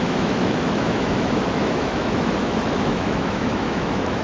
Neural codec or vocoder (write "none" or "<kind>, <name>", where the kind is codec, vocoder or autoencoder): autoencoder, DAC-VAE